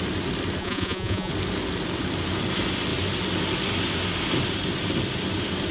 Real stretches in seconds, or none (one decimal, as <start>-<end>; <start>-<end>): 0.0-0.6; 1.3-5.7